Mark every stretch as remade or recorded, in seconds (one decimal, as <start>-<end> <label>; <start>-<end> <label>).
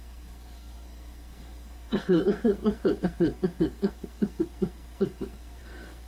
0.0-6.1 remade